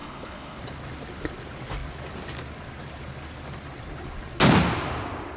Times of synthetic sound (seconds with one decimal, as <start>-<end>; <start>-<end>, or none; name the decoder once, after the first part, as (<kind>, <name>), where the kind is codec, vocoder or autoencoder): 0.0-0.6 (codec, HILCodec)